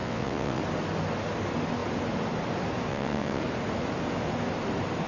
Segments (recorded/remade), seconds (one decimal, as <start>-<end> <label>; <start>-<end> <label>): 0.0-0.6 remade; 0.6-2.9 recorded; 2.9-3.4 remade; 3.4-5.1 recorded